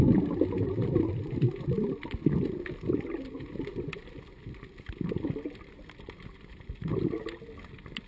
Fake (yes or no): no